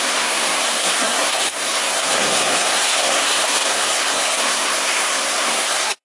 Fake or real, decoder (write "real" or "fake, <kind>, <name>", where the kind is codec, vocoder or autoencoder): fake, codec, SNAC